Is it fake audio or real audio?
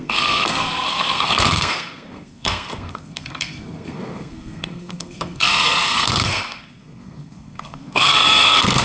fake